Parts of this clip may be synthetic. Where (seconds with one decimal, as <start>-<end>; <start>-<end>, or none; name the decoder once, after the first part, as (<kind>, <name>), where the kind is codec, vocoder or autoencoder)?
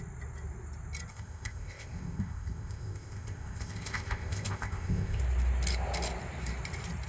1.1-5.2 (codec, ZipCodec)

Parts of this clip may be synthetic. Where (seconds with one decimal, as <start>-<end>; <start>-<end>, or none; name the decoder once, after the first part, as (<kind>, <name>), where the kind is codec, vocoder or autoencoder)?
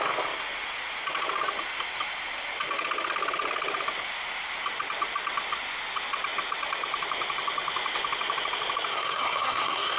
8.9-10.0 (codec, SNAC)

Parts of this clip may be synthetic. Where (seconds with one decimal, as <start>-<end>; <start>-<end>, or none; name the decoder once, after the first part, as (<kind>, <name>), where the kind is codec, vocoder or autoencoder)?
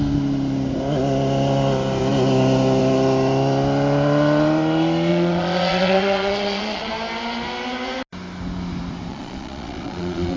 5.1-6.9 (vocoder, Vocos); 9.1-10.4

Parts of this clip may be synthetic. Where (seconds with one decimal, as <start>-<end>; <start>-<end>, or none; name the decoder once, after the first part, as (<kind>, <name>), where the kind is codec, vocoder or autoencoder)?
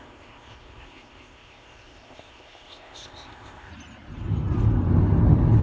0.0-3.7 (codec, ZipCodec)